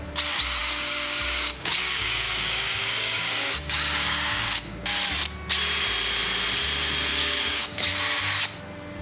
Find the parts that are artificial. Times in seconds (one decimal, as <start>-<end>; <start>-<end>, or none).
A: 0.6-4.8; 7.1-7.9

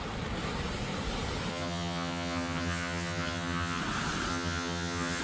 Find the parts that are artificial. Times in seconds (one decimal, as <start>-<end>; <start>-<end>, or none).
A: 1.5-3.8; 4.3-5.2

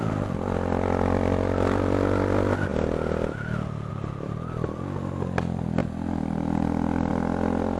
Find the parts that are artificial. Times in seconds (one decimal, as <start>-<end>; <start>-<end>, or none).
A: none

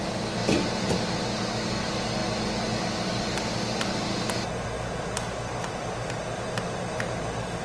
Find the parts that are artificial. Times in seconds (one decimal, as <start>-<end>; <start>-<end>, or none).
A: none

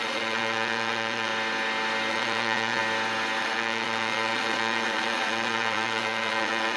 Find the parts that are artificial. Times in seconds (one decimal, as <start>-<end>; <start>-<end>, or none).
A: 0.0-1.3; 2.1-2.8; 3.4-6.8

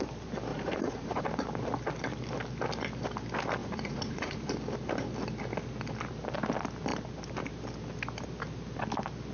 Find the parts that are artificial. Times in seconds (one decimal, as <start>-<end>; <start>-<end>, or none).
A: 0.5-1.2; 3.6-4.5